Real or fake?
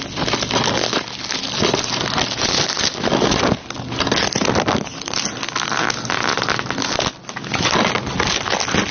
real